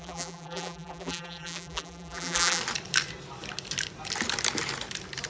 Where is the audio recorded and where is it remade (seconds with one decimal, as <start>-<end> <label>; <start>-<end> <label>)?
0.0-2.6 remade; 2.6-5.3 recorded